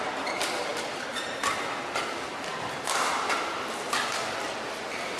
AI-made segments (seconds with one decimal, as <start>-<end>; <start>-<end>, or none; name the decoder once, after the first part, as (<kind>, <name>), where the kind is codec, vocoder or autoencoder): none